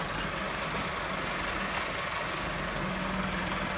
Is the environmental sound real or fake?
real